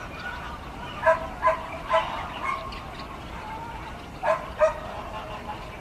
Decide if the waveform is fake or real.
real